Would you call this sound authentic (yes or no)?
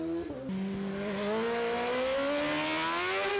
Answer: yes